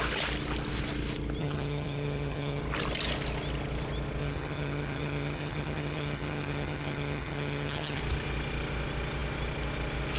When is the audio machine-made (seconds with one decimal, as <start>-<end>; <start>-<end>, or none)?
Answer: 1.4-2.6; 4.2-8.0